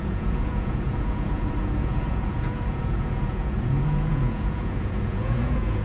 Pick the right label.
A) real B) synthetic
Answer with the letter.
B